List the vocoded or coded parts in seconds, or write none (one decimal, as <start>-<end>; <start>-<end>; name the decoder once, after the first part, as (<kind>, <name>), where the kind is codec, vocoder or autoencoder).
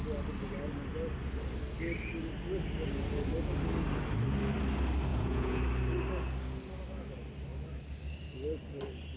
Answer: 5.1-5.6 (vocoder, Vocos)